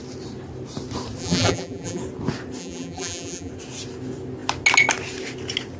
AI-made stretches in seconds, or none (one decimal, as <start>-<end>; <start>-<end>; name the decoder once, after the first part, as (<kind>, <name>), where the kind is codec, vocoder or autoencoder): 1.2-2.0 (vocoder, BigVGAN v2); 2.6-3.5